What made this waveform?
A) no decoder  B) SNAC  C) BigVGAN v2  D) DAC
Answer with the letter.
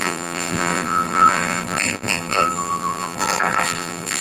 C